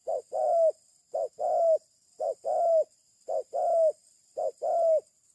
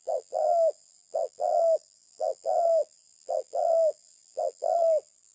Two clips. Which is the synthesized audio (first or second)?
second